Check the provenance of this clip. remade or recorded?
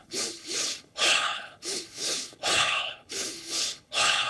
remade